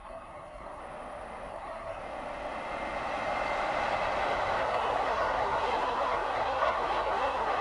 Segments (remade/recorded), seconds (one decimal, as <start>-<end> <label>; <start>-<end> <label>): 0.0-0.8 remade; 0.8-1.5 recorded; 1.5-2.0 remade; 2.0-4.6 recorded; 4.6-7.6 remade